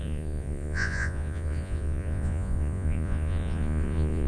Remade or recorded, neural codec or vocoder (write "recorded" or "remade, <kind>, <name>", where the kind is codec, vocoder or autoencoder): remade, vocoder, Vocos